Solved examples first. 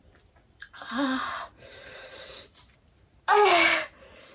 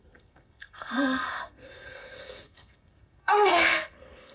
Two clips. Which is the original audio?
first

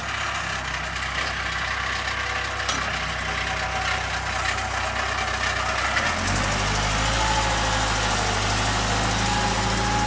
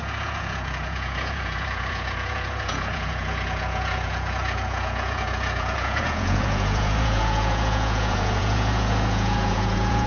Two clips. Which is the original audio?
first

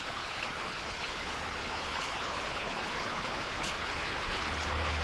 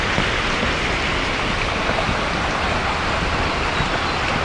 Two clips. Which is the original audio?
second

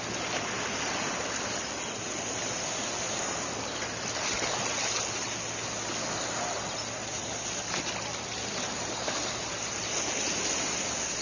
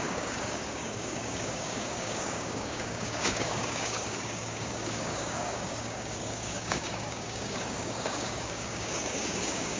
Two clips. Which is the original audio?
first